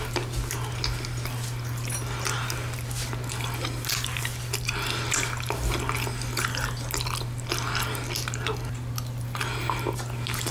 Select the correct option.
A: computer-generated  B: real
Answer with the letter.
B